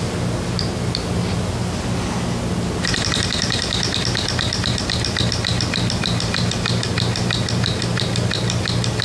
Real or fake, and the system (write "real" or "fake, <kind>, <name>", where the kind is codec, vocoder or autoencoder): real